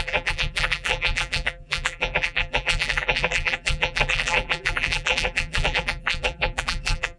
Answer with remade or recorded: remade